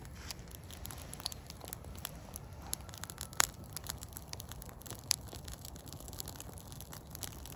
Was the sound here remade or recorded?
remade